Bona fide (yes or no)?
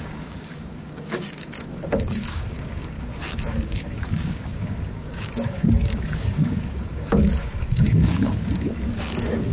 no